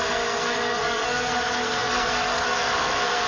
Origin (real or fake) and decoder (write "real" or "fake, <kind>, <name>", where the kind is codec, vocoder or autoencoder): fake, codec, SNAC